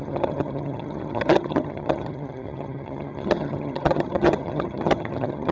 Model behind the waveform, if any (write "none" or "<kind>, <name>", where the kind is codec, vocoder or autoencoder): vocoder, HiFi-GAN